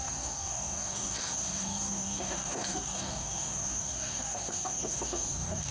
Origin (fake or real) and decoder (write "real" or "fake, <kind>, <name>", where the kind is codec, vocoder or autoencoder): fake, codec, DAC